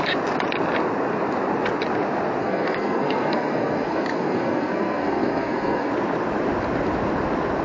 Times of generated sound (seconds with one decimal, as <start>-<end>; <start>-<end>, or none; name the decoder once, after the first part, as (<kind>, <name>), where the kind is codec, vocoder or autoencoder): 2.4-5.9 (codec, SNAC)